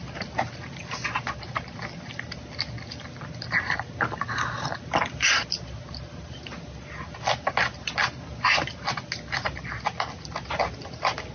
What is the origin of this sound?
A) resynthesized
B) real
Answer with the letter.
B